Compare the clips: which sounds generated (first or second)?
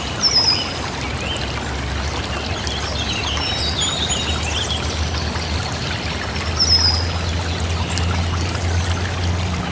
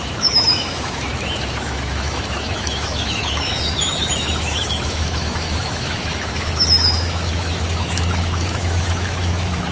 second